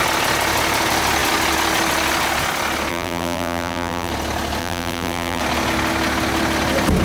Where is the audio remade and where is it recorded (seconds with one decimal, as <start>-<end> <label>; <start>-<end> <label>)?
0.0-2.9 recorded; 2.9-4.1 remade; 4.1-4.6 recorded; 4.6-5.4 remade; 5.4-7.0 recorded